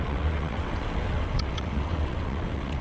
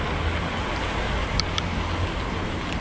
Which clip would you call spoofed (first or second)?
first